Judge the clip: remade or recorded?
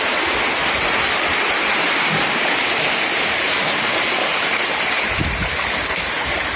remade